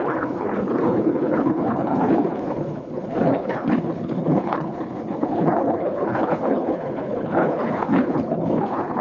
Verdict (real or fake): fake